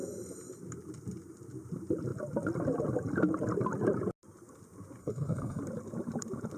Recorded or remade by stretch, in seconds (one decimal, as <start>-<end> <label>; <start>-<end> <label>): 0.0-5.0 recorded; 5.0-5.6 remade; 5.6-6.6 recorded